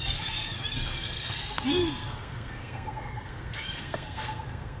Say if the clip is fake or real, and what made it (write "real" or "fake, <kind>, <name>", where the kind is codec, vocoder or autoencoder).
fake, codec, SNAC